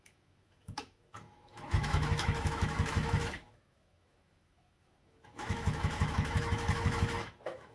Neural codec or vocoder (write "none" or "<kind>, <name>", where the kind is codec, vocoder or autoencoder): autoencoder, DAC-VAE